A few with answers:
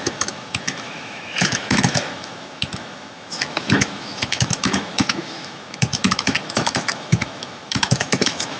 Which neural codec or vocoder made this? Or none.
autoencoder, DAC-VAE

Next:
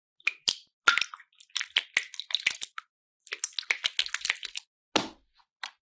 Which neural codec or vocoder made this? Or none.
none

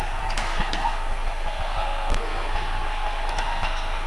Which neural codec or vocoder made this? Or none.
codec, SNAC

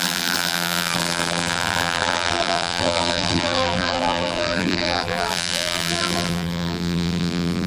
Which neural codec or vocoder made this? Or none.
vocoder, BigVGAN v2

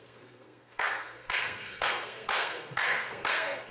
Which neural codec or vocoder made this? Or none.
codec, SNAC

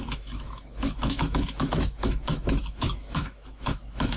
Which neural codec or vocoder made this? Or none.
autoencoder, DAC-VAE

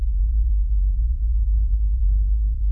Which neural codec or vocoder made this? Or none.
vocoder, Vocos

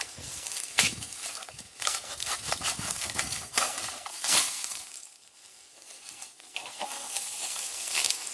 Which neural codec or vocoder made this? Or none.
codec, SNAC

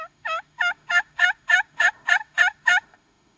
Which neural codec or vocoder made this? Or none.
autoencoder, DAC-VAE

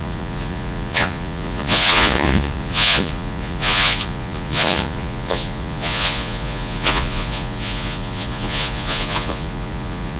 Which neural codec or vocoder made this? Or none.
vocoder, Vocos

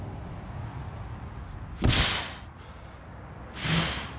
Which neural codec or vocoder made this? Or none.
none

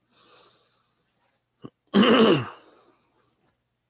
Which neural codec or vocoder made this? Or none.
none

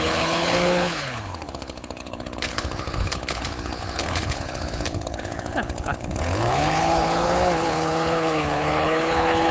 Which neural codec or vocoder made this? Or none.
codec, HILCodec